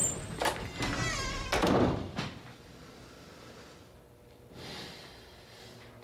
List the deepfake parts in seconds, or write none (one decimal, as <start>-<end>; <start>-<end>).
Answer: none